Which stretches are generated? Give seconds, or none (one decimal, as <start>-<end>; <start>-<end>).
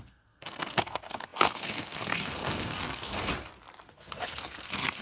0.0-3.3; 3.9-5.0